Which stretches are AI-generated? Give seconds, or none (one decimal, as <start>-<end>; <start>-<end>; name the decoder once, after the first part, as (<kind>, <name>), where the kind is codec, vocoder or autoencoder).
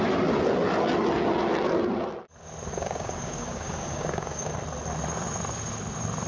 2.7-4.5 (codec, DAC)